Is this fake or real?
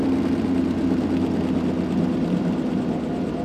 real